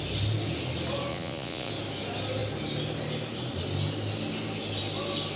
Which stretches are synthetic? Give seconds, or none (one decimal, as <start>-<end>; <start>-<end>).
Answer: 1.1-1.7